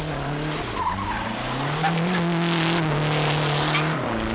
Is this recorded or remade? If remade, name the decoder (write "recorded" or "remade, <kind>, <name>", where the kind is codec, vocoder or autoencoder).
recorded